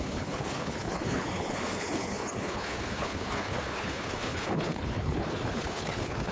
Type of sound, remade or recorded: remade